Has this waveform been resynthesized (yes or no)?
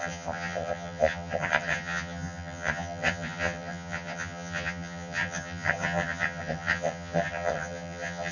yes